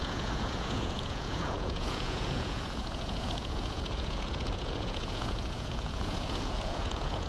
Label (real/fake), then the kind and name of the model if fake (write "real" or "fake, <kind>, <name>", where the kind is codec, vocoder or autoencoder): fake, vocoder, Vocos